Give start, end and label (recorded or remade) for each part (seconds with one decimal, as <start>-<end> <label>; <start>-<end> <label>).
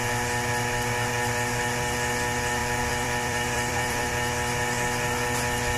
0.0-2.6 recorded; 2.6-4.0 remade; 4.0-5.8 recorded